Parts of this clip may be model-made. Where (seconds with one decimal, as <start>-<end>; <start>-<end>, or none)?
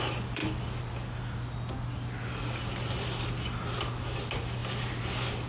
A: none